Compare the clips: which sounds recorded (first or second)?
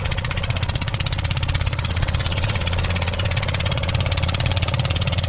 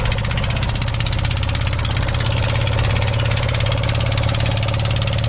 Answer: second